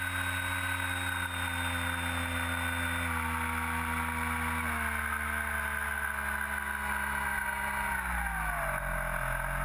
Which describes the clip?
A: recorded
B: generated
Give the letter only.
A